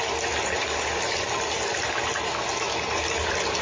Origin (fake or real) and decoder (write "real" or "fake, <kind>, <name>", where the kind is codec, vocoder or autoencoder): real